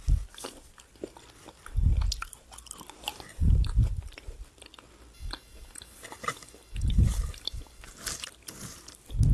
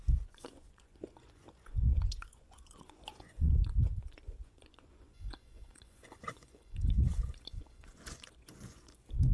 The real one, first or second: first